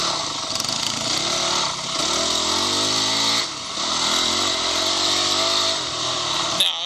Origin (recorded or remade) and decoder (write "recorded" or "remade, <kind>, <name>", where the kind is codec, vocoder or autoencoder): recorded